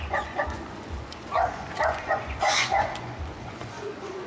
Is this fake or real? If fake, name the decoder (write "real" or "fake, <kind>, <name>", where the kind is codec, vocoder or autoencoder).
fake, vocoder, Vocos